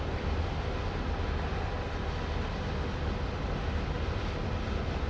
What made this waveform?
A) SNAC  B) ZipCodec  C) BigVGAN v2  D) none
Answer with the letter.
D